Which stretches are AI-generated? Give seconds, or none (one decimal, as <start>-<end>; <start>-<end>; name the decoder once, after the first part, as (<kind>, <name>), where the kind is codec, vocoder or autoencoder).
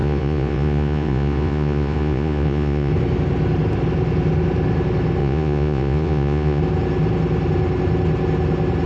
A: 0.0-2.9 (vocoder, Vocos); 5.2-6.6